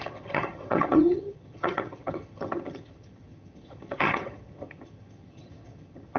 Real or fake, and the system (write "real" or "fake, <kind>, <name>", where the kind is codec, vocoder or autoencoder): fake, vocoder, HiFi-GAN